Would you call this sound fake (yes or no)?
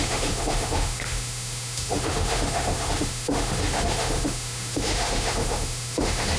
yes